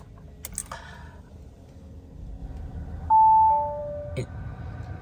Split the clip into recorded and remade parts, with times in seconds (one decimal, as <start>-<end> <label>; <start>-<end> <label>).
0.0-5.0 recorded